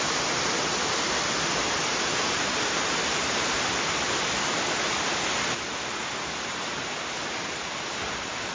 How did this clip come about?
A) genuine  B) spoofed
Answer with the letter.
A